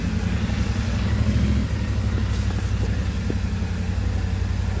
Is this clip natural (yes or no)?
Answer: yes